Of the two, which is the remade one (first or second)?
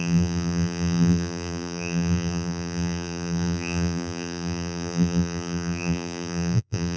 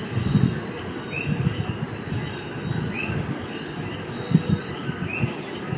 first